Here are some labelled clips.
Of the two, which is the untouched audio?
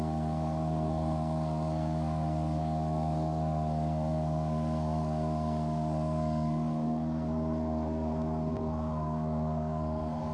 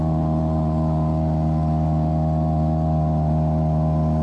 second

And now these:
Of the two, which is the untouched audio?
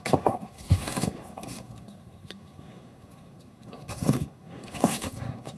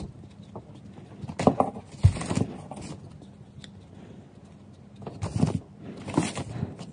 second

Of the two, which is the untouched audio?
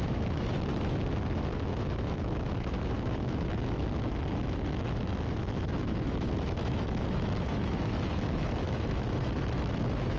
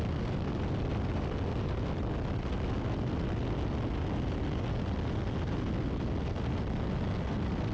second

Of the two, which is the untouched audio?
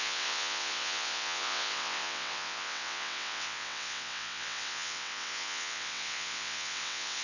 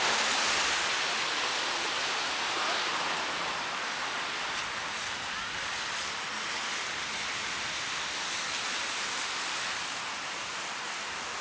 second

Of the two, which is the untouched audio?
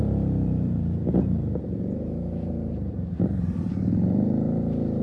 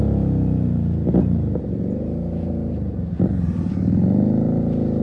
second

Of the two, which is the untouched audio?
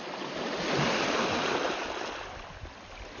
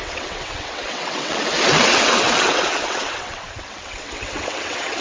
first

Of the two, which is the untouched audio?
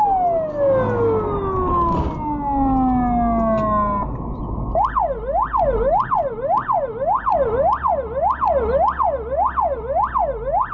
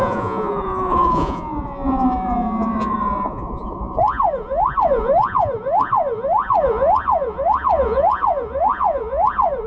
first